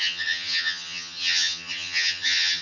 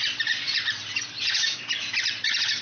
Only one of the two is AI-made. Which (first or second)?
first